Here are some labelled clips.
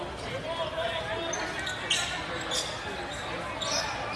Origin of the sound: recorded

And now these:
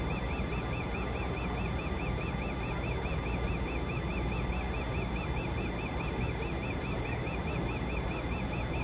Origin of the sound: recorded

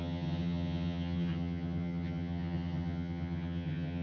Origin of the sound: remade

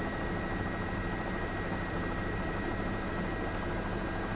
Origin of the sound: remade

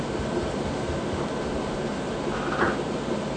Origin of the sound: remade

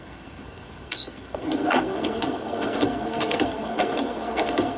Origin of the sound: remade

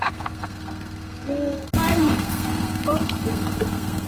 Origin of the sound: remade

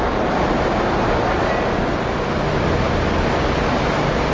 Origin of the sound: recorded